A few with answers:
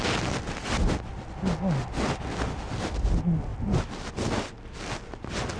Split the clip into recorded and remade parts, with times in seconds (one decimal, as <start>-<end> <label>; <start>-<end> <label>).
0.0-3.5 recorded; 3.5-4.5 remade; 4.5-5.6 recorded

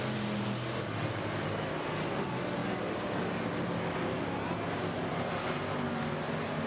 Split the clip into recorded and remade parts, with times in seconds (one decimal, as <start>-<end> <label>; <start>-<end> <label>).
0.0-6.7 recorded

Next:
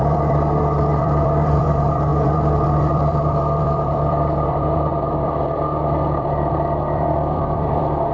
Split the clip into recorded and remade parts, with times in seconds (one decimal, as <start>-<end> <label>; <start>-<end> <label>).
0.0-8.1 remade

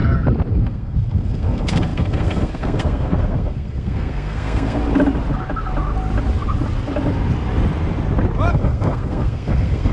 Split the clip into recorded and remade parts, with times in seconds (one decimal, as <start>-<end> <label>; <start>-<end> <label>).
0.0-0.5 recorded; 0.5-4.8 remade; 4.8-8.5 recorded; 8.5-9.9 remade

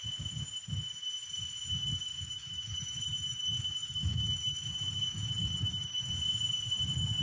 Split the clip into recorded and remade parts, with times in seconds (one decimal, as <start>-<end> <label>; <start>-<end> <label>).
0.0-1.8 recorded; 1.8-6.1 remade; 6.1-7.2 recorded

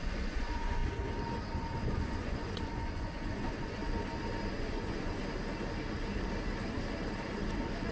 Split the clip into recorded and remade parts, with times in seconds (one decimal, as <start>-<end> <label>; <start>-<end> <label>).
0.0-0.8 remade; 0.8-1.5 recorded; 1.5-3.8 remade; 3.8-4.5 recorded; 4.5-5.2 remade; 5.2-7.9 recorded

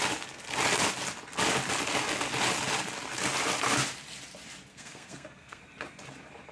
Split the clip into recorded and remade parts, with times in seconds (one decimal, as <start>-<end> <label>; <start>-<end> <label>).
0.0-4.7 recorded; 4.7-5.6 remade; 5.6-6.5 recorded